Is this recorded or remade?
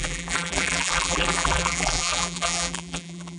remade